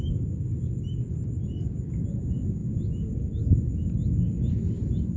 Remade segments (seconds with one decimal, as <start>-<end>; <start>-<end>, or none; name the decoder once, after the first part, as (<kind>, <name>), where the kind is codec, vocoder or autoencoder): none

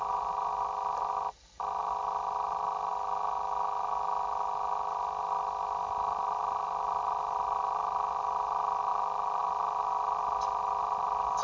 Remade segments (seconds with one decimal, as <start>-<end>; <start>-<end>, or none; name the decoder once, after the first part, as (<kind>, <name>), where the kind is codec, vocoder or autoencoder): none